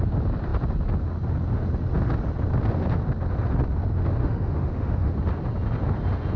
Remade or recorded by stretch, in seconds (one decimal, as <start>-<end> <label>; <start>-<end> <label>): 0.0-4.2 recorded; 4.2-5.1 remade; 5.1-6.4 recorded